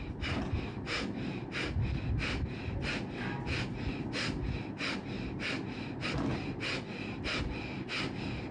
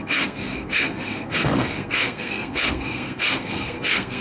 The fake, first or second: second